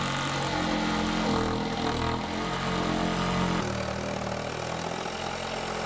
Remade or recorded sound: recorded